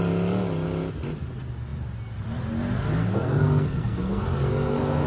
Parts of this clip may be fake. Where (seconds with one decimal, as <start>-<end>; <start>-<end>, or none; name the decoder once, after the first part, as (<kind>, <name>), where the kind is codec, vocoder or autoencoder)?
3.0-5.1 (codec, SNAC)

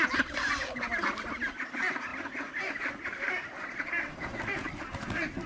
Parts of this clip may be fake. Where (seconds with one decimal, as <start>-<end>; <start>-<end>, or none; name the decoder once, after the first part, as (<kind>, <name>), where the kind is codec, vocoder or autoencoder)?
none

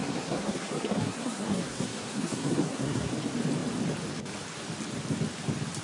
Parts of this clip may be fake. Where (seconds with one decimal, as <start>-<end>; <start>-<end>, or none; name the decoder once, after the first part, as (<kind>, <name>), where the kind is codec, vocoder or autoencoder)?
0.0-3.1 (codec, SNAC)

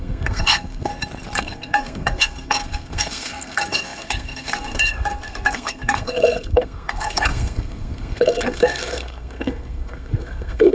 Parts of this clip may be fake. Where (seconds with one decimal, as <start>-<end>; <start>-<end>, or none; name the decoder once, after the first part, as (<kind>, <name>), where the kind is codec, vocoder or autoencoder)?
0.0-0.9 (codec, SNAC); 1.4-10.7